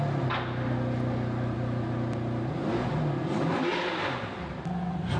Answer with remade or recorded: recorded